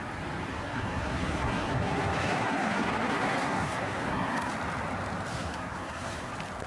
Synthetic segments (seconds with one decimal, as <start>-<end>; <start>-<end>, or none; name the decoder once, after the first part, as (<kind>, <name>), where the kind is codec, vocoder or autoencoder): 0.5-4.5 (codec, SNAC); 5.3-6.3